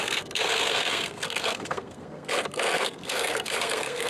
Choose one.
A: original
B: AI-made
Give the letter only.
B